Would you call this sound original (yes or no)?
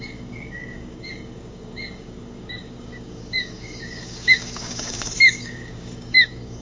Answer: no